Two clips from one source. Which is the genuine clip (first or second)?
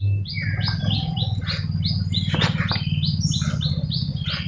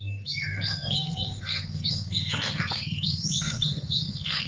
first